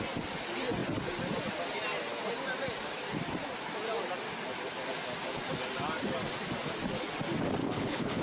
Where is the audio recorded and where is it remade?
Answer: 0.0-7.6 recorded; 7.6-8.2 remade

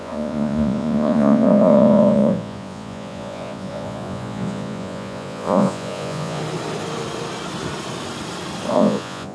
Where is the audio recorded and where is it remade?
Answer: 0.0-6.4 remade; 6.4-8.7 recorded; 8.7-9.3 remade

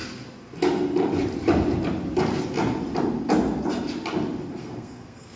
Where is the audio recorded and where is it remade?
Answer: 0.0-4.6 recorded; 4.6-5.4 remade

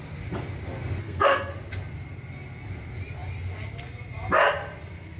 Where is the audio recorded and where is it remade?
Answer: 0.0-1.0 recorded; 1.0-1.5 remade; 1.5-5.2 recorded